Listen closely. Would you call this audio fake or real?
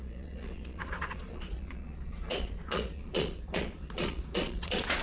fake